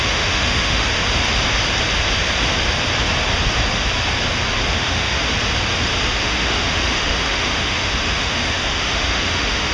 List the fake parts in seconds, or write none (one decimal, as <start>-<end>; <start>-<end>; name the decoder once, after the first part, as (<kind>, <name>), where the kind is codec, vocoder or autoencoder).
0.0-0.8 (autoencoder, DAC-VAE); 4.8-5.3; 6.1-9.7